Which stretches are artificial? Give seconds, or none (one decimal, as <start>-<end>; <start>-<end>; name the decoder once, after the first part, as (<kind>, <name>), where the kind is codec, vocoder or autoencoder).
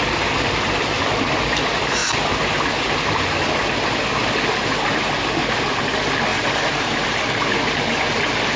6.3-7.2 (vocoder, BigVGAN v2)